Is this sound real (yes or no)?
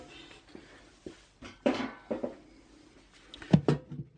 yes